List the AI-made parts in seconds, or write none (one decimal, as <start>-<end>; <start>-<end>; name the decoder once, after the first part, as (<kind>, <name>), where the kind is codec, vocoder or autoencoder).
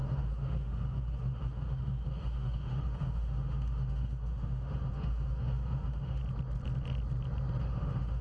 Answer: 0.0-6.2 (autoencoder, DAC-VAE); 7.6-8.2